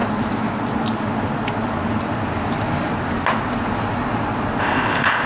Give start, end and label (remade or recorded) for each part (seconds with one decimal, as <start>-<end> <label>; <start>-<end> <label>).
0.0-4.6 recorded; 4.6-5.3 remade